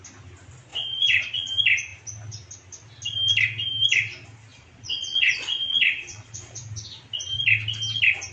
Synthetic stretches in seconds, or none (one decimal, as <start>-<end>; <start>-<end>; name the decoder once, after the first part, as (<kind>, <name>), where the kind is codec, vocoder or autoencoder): 0.7-1.5 (vocoder, Vocos); 4.5-6.6